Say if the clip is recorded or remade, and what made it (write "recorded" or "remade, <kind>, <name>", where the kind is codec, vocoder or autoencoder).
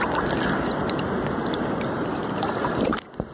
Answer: recorded